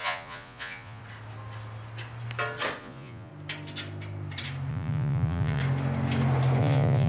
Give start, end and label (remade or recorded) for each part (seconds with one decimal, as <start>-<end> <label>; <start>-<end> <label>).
0.0-1.0 remade; 1.0-2.8 recorded; 2.8-3.3 remade; 3.3-4.7 recorded; 4.7-5.6 remade; 5.6-6.6 recorded; 6.6-7.1 remade

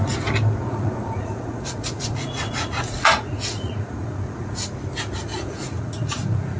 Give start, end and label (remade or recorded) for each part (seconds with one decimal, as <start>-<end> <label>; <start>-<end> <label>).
0.0-0.6 recorded; 0.6-4.6 remade; 4.6-5.3 recorded; 5.3-6.6 remade

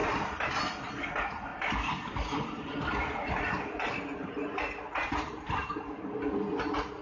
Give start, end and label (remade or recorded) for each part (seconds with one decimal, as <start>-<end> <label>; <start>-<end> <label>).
0.0-7.0 recorded

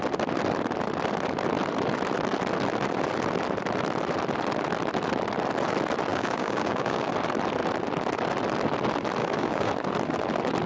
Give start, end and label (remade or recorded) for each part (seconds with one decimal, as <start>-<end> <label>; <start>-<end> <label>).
0.0-6.1 recorded; 6.1-7.1 remade; 7.1-9.2 recorded; 9.2-9.7 remade; 9.7-10.7 recorded

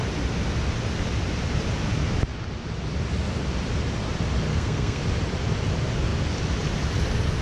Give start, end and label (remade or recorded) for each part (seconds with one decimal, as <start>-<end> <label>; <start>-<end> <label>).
0.0-4.5 recorded; 4.5-5.0 remade; 5.0-7.4 recorded

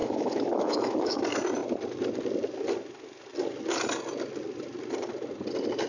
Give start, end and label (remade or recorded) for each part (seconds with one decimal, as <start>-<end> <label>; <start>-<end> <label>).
0.0-1.2 remade; 1.2-5.9 recorded

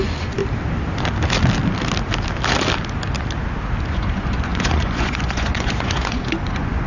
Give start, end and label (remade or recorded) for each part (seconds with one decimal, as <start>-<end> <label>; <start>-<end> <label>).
0.0-0.4 remade; 0.4-3.8 recorded; 3.8-6.9 remade